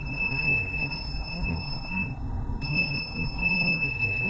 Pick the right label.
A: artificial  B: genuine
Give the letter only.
A